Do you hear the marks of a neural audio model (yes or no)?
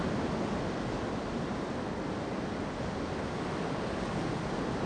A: no